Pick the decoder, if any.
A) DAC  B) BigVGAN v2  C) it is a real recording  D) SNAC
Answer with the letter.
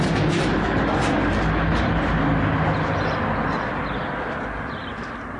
C